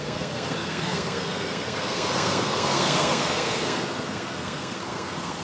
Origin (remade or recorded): remade